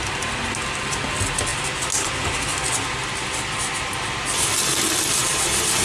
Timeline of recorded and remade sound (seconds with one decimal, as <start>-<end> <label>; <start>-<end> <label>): 0.0-5.2 recorded; 5.2-5.8 remade